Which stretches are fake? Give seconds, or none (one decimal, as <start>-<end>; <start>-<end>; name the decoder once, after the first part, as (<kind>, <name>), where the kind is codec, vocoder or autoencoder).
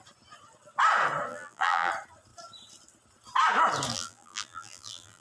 1.3-1.9 (vocoder, BigVGAN v2); 3.9-5.2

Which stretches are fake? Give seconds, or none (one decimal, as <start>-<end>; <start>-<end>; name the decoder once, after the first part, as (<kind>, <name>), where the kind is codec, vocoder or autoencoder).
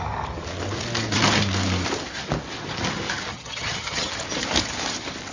3.3-4.1 (vocoder, HiFi-GAN)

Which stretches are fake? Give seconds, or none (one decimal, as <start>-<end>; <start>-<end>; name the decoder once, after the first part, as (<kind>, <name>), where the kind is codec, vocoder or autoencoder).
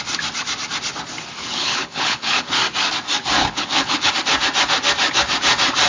1.4-2.6 (codec, HILCodec); 3.4-4.1